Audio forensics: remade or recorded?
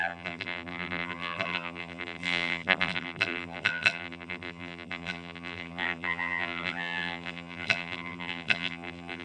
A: remade